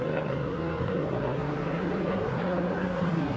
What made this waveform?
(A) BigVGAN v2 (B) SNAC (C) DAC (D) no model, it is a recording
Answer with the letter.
B